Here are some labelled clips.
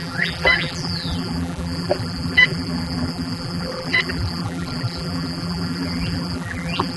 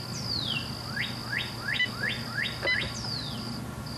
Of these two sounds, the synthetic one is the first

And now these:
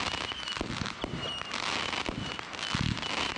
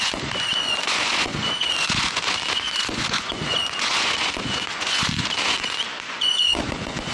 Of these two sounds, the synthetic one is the second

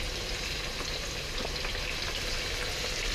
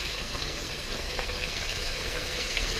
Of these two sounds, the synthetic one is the second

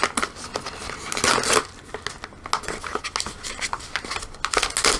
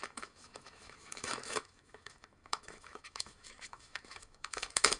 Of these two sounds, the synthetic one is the second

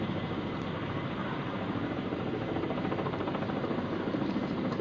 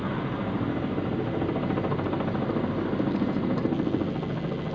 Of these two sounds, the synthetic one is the first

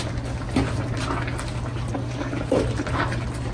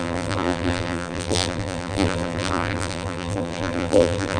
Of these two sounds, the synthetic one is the second